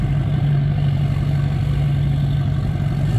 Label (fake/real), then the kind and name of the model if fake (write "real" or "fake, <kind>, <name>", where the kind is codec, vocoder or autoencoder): real